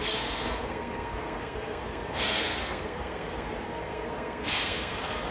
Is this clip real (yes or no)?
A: no